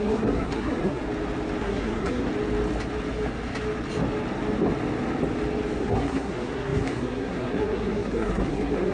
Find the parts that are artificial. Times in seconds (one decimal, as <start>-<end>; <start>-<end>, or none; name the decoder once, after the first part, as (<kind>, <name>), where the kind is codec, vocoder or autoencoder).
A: 0.0-1.0 (codec, SNAC); 1.6-2.3; 5.8-8.9